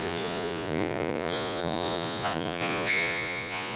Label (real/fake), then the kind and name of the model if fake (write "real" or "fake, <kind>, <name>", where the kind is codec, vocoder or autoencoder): fake, vocoder, Vocos